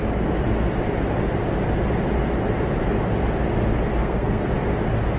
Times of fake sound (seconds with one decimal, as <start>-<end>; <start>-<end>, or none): 4.0-4.5